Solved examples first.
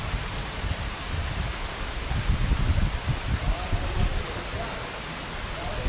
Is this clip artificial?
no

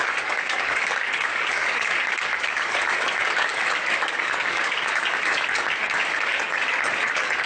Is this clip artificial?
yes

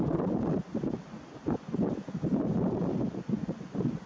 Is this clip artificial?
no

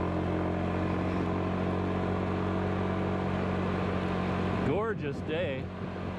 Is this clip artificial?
no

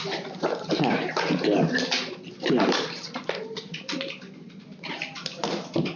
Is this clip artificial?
no